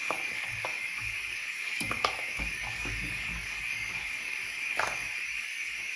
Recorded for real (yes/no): no